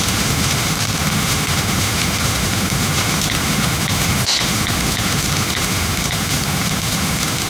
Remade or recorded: remade